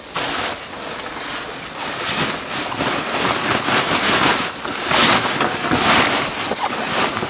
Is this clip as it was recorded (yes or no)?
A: yes